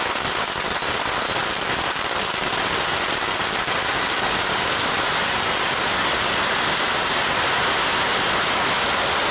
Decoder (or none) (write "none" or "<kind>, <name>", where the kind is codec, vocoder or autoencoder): none